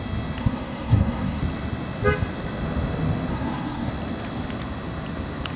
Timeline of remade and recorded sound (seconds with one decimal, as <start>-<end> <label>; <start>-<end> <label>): 0.0-0.4 recorded; 0.4-1.4 remade; 1.4-3.3 recorded; 3.3-3.9 remade; 3.9-5.6 recorded